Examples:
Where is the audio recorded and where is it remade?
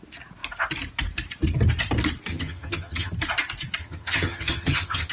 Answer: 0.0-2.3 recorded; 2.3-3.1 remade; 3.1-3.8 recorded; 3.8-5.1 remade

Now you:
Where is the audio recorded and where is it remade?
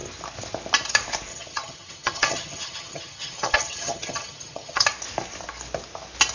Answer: 0.0-1.3 recorded; 1.3-4.8 remade; 4.8-6.3 recorded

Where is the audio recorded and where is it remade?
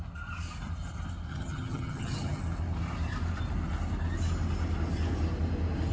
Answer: 0.0-1.3 recorded; 1.3-2.4 remade; 2.4-5.9 recorded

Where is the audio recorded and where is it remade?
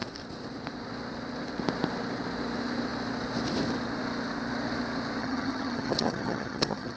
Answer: 0.0-5.2 recorded; 5.2-7.0 remade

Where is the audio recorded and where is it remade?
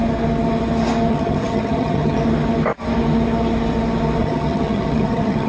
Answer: 0.0-1.1 recorded; 1.1-2.2 remade; 2.2-4.2 recorded; 4.2-5.5 remade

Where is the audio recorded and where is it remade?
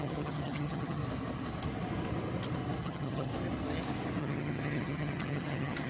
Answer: 0.0-1.0 remade; 1.0-2.8 recorded; 2.8-3.3 remade; 3.3-4.2 recorded; 4.2-5.9 remade